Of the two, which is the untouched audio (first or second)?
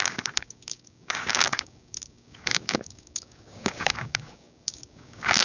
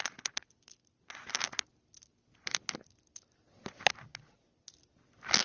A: second